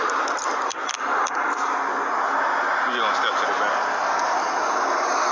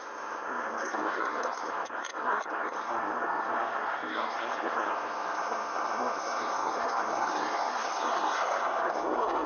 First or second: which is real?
first